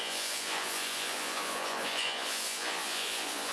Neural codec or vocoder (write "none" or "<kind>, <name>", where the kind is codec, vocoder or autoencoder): vocoder, Vocos